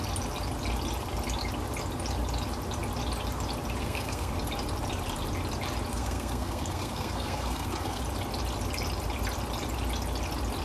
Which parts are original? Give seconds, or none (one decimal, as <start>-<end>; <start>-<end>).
0.0-3.8; 4.3-5.9; 8.0-10.6